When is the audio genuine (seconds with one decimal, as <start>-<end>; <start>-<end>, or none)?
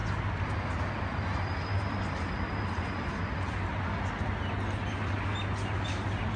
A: 0.0-6.4